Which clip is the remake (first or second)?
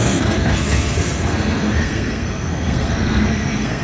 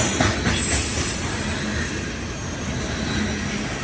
first